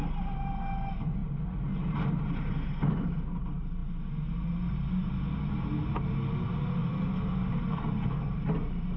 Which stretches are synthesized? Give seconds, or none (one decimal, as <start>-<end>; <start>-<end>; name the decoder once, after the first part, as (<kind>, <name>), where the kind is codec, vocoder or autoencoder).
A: 6.8-7.9 (vocoder, BigVGAN v2)